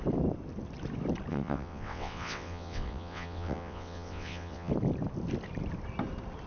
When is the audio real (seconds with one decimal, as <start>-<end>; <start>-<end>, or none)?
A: 0.0-1.3; 4.7-6.5